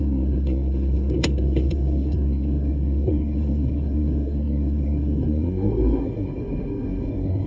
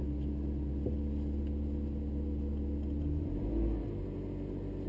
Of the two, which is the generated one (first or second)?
first